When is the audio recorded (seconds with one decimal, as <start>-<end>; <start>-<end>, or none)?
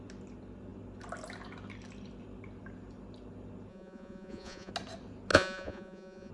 0.0-3.7; 4.7-5.3